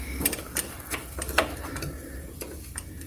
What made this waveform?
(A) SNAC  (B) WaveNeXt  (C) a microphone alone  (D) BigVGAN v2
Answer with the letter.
D